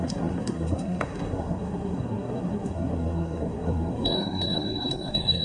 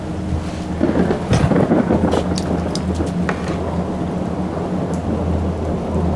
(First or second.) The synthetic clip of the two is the first